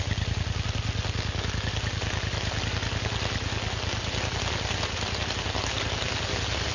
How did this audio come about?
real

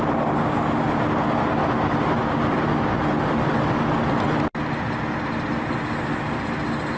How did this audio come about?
real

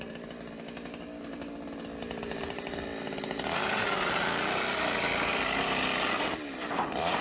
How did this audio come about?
real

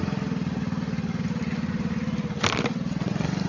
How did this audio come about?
real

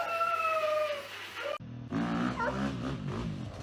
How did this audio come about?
real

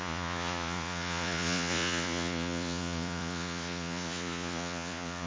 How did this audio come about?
fake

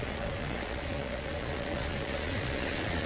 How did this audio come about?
fake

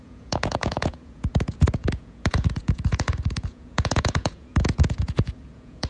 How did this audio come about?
fake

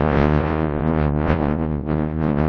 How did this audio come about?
fake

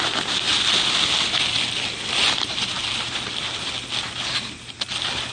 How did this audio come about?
real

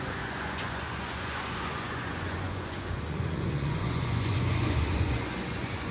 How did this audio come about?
fake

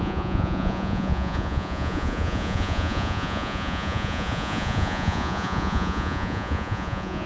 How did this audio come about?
fake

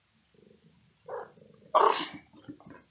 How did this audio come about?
real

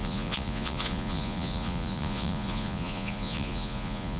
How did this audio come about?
fake